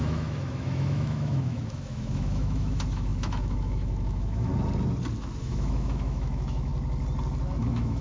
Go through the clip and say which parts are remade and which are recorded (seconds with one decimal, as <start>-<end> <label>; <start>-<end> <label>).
0.0-4.5 remade; 4.5-5.4 recorded; 5.4-6.7 remade; 6.7-7.6 recorded; 7.6-8.0 remade